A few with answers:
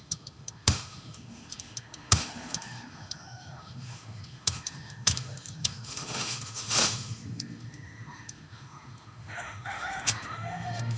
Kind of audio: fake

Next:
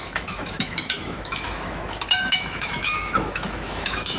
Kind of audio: fake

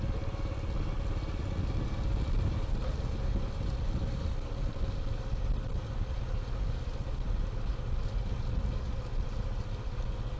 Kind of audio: real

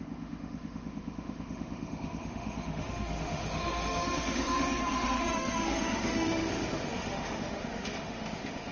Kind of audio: fake